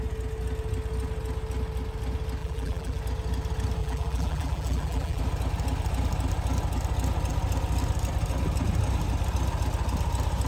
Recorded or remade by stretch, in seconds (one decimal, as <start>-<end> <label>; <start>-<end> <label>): 0.0-2.4 recorded; 2.4-3.0 remade; 3.0-3.8 recorded; 3.8-5.2 remade; 5.2-10.5 recorded

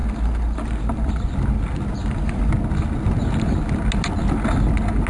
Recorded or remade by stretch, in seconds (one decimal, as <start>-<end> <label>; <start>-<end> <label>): 0.0-1.1 remade; 1.1-2.0 recorded; 2.0-2.5 remade; 2.5-5.1 recorded

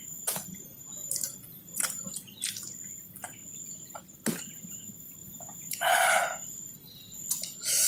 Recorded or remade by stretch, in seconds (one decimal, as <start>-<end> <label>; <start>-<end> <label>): 0.0-1.0 recorded; 1.0-2.1 remade; 2.1-5.2 recorded; 5.2-5.7 remade; 5.7-7.9 recorded

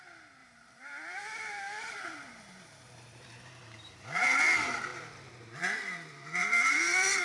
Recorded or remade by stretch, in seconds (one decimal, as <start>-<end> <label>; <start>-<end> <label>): 0.0-0.4 recorded; 0.4-4.4 remade; 4.4-4.9 recorded; 4.9-5.6 remade; 5.6-6.4 recorded; 6.4-7.2 remade

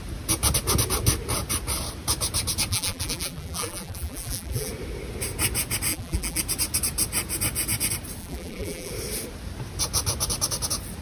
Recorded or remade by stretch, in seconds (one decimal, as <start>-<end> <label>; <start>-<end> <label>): 0.0-2.7 recorded; 2.7-4.7 remade; 4.7-5.9 recorded; 5.9-6.4 remade; 6.4-8.2 recorded; 8.2-8.9 remade; 8.9-11.0 recorded